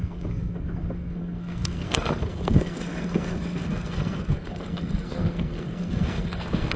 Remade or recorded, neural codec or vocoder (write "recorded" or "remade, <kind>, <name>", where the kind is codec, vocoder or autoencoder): remade, codec, SNAC